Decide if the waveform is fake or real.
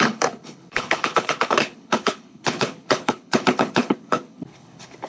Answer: fake